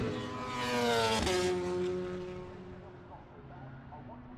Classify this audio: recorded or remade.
recorded